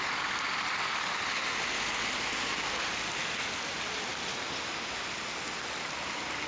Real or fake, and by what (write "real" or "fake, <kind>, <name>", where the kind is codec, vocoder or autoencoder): real